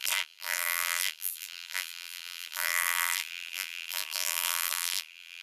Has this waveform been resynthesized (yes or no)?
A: yes